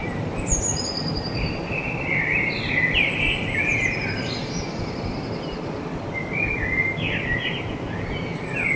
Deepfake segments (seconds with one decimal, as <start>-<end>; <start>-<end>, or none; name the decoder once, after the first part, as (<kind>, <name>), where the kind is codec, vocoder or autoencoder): 0.0-1.8 (vocoder, BigVGAN v2); 4.4-6.3